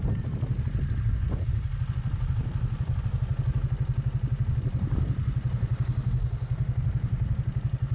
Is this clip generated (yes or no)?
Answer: no